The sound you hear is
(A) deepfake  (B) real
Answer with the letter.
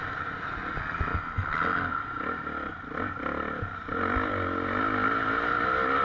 B